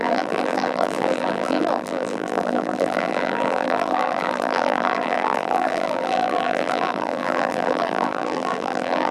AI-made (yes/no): yes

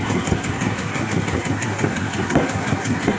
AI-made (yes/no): yes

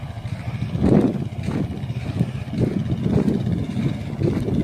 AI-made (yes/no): no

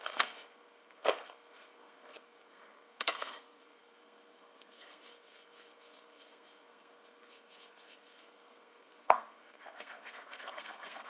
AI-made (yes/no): yes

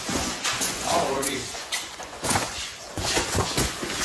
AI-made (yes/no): yes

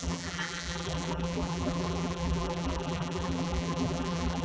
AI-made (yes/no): yes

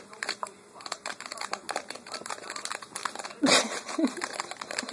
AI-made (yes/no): no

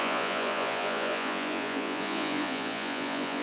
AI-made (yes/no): yes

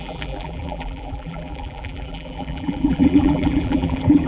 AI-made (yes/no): yes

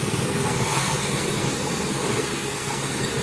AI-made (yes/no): yes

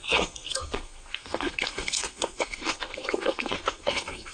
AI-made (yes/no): yes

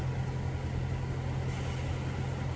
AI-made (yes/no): no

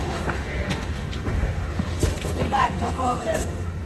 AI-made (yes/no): yes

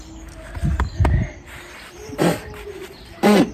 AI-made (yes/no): yes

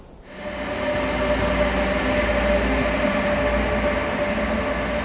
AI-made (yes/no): no